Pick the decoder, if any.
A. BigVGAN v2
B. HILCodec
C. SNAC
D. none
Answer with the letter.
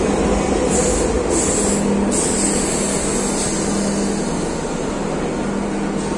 D